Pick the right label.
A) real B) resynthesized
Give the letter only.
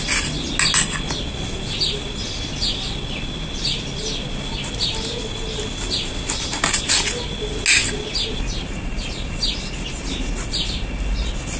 A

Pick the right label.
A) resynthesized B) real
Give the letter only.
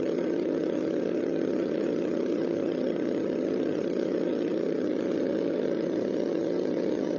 A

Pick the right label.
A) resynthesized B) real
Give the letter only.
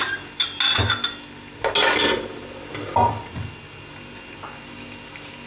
B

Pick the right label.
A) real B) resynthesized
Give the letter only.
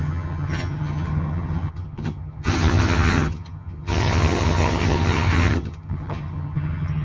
B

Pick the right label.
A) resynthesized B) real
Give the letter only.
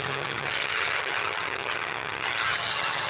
A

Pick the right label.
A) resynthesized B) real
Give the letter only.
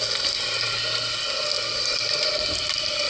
B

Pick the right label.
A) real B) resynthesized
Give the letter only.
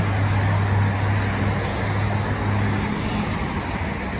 A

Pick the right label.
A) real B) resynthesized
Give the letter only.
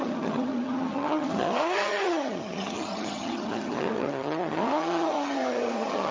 B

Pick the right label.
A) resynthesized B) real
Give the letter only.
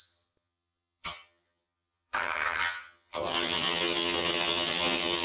A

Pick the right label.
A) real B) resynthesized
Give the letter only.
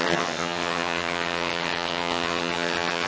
B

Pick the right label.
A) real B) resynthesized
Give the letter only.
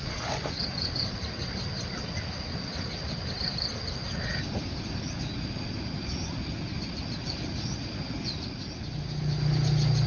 A